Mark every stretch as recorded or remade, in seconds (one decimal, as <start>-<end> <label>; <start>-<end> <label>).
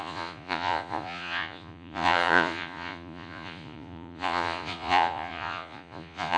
0.0-6.4 remade